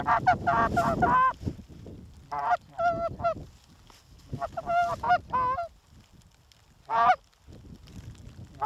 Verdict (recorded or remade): recorded